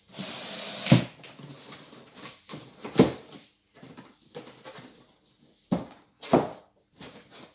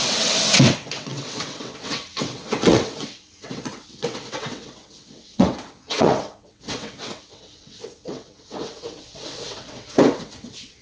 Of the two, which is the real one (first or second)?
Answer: first